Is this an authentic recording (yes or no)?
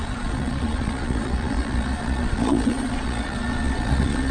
no